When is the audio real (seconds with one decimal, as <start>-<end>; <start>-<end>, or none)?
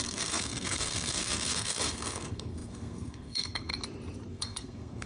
3.7-4.3